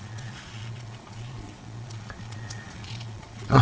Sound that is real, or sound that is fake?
fake